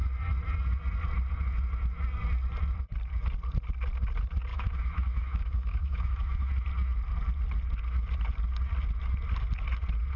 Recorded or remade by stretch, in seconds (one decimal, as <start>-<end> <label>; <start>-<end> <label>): 0.0-4.5 recorded; 4.5-6.5 remade; 6.5-10.2 recorded